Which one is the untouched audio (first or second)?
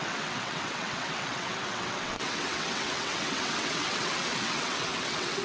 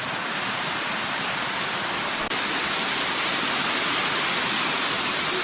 second